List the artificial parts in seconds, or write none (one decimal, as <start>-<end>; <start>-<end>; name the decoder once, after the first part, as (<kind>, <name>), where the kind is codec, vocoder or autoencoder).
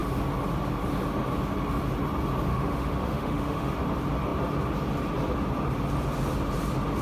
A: 2.5-3.7 (autoencoder, DAC-VAE)